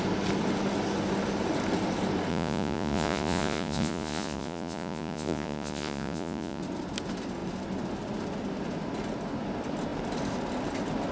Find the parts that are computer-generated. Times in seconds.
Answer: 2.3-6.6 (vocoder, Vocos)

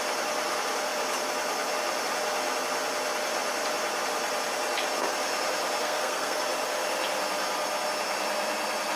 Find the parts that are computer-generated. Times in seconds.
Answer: 5.8-6.4 (codec, SNAC)

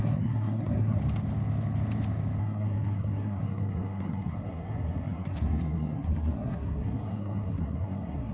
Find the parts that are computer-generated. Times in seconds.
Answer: 0.0-1.0 (codec, SNAC); 2.4-8.3

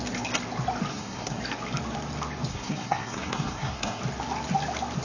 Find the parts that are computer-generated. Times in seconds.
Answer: 0.9-1.4 (codec, SNAC); 2.5-4.0

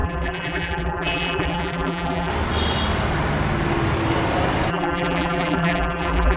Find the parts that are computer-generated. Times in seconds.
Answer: 0.0-2.3 (vocoder, BigVGAN v2); 4.7-6.4

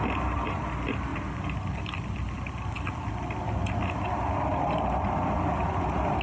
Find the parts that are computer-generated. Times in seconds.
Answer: none